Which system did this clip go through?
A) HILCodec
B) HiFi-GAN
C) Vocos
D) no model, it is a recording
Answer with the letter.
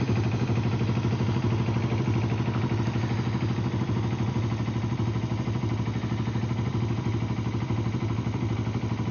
D